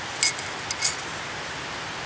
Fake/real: real